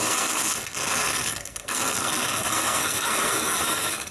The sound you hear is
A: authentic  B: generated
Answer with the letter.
B